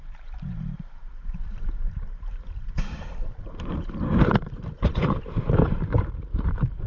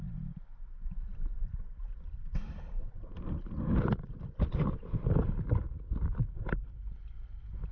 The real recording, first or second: second